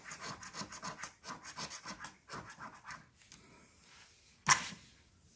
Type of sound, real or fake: real